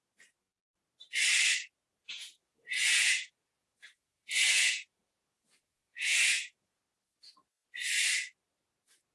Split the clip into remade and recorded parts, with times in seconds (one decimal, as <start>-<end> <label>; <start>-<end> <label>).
0.0-2.0 recorded; 2.0-6.8 remade; 6.8-9.1 recorded